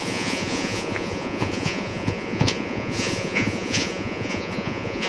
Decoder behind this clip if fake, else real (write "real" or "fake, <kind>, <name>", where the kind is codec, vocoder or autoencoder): fake, vocoder, Vocos